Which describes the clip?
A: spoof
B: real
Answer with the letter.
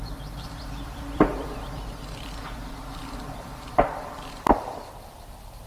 A